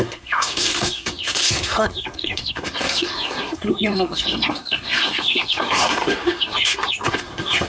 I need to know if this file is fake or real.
fake